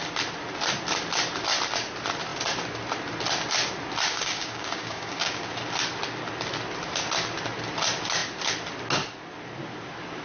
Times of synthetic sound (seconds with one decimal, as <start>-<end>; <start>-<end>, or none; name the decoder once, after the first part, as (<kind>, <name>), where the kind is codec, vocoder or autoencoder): 4.1-5.4 (codec, DAC)